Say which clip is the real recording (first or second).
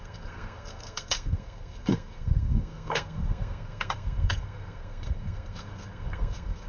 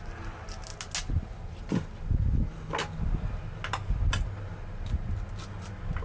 second